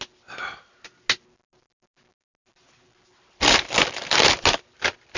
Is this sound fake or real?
real